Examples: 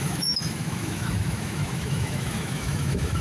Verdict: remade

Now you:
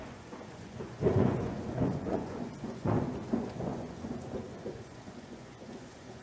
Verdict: remade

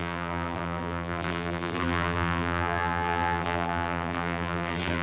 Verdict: remade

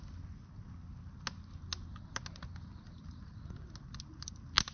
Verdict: recorded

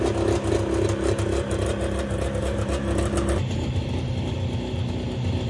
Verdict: recorded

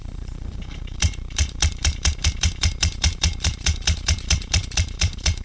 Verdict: remade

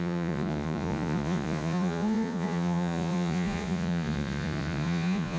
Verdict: remade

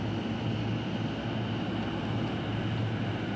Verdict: recorded